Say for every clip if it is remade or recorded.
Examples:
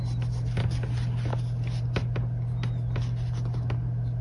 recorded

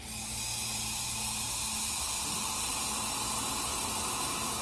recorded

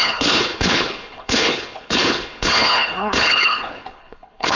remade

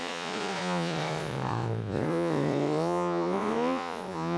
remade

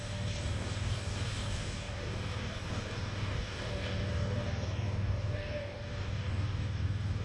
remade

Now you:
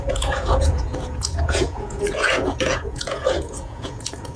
remade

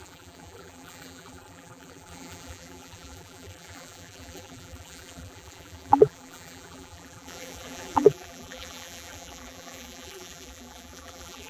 remade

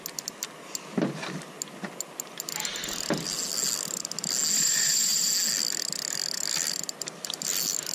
recorded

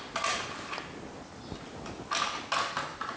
recorded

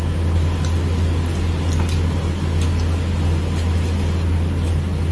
recorded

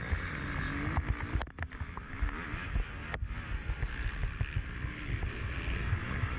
recorded